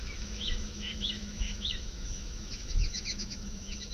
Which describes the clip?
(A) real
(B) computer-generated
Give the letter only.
B